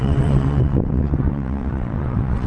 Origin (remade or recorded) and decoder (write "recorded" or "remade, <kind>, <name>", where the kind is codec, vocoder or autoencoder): remade, vocoder, WaveNeXt